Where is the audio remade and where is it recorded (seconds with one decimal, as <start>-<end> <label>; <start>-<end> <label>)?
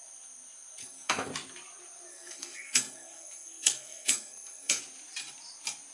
0.0-0.8 recorded; 0.8-1.3 remade; 1.3-2.1 recorded; 2.1-4.8 remade; 4.8-5.9 recorded